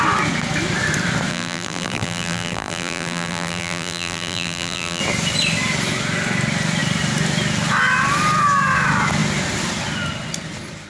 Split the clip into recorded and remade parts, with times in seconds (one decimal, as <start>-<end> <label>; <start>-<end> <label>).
0.0-1.3 recorded; 1.3-5.0 remade; 5.0-10.9 recorded